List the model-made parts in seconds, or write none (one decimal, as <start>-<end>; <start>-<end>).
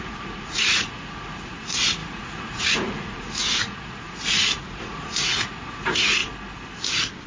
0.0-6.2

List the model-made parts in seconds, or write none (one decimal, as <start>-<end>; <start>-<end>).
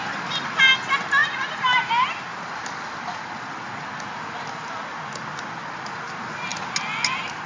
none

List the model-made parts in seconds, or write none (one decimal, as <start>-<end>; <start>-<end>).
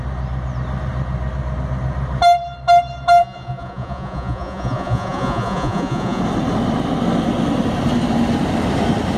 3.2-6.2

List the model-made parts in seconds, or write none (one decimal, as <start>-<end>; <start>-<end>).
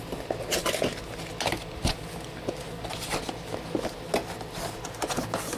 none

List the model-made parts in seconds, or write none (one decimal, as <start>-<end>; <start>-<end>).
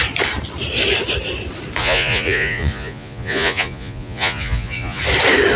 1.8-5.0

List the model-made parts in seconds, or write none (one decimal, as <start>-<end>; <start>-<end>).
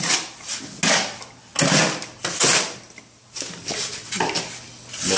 none